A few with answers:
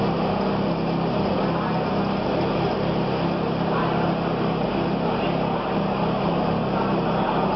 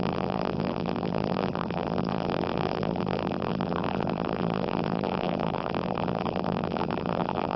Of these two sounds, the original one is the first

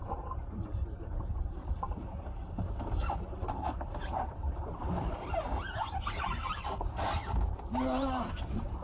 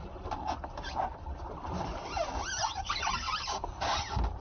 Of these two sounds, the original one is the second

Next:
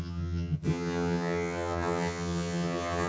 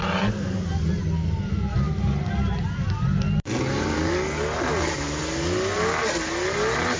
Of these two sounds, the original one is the second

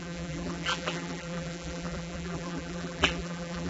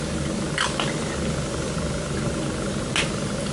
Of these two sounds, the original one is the second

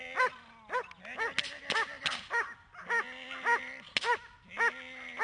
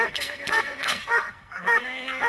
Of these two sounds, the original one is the first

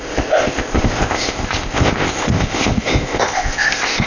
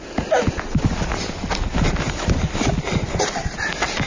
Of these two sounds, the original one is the second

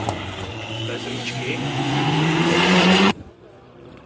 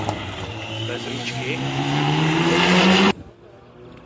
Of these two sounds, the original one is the second